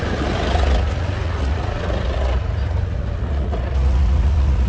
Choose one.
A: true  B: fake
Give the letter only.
B